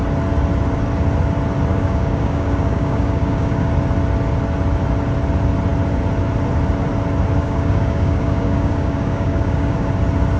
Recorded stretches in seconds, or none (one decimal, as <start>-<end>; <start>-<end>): 0.0-1.7; 3.7-7.4; 9.9-10.4

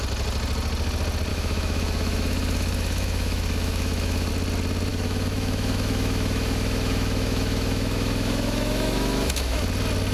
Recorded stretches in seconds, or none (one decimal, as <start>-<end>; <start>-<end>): 0.0-1.3; 4.3-4.9; 9.6-10.1

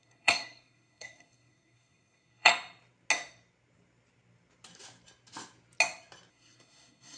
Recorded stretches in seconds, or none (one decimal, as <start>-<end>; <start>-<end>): 2.5-6.3

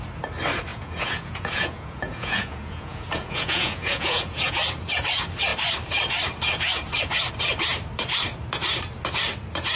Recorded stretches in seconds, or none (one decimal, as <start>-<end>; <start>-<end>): 0.0-0.7; 4.6-9.8

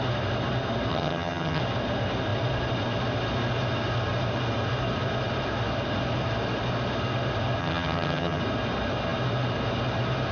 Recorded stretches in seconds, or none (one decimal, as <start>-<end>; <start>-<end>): 0.0-0.9; 1.6-7.6; 8.4-10.3

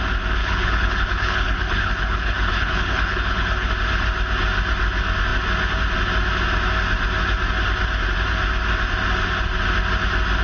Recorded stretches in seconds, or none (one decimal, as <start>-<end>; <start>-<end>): 0.0-0.4; 3.7-10.4